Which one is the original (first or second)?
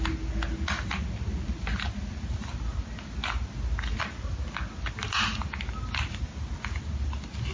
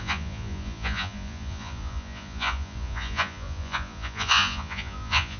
first